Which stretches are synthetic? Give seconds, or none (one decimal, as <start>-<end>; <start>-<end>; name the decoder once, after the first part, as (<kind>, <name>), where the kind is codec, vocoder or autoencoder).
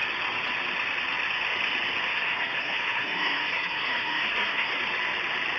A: 2.1-4.8 (codec, SNAC)